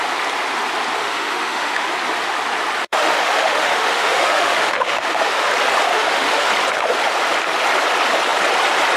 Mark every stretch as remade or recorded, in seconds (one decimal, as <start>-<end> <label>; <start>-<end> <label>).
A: 0.0-1.0 recorded; 1.0-1.9 remade; 1.9-2.8 recorded; 2.8-5.5 remade; 5.5-5.9 recorded; 5.9-6.5 remade; 6.5-9.0 recorded